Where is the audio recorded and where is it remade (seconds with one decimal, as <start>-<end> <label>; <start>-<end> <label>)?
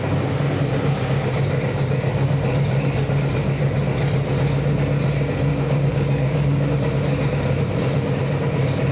0.0-5.5 recorded; 5.5-6.7 remade; 6.7-8.9 recorded